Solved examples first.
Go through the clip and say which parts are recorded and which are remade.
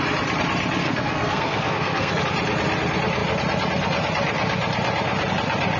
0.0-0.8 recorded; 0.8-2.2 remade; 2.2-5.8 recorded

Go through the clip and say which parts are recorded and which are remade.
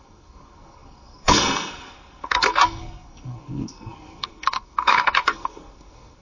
0.0-6.2 remade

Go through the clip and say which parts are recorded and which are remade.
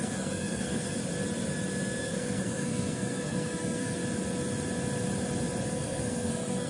0.0-1.0 remade; 1.0-2.0 recorded; 2.0-4.0 remade; 4.0-5.7 recorded; 5.7-6.7 remade